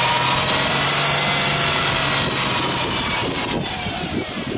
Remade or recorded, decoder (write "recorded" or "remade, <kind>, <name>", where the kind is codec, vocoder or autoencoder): recorded